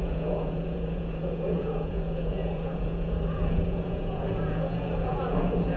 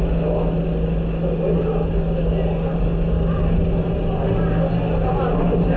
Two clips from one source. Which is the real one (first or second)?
second